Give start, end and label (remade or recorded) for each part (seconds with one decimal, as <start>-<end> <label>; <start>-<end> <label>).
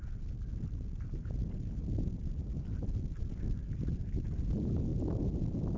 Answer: 0.0-5.8 recorded